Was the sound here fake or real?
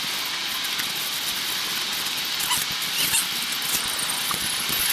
real